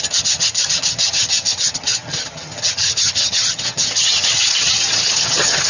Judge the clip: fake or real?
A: fake